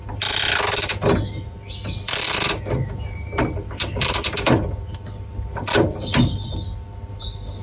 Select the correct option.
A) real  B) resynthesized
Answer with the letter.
A